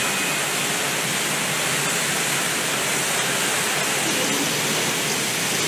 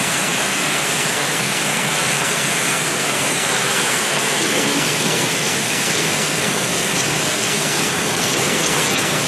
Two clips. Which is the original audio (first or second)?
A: first